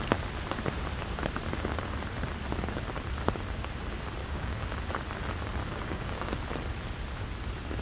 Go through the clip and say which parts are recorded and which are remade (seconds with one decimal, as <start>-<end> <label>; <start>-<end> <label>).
0.0-4.2 recorded; 4.2-4.9 remade; 4.9-5.6 recorded; 5.6-6.3 remade; 6.3-7.8 recorded